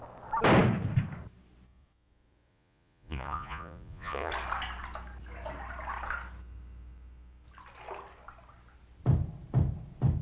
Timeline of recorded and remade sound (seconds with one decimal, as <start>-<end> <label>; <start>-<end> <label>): 0.0-2.5 recorded; 2.5-4.3 remade; 4.3-10.2 recorded